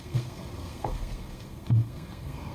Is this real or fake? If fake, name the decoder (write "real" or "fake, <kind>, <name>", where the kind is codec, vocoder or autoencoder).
fake, codec, SNAC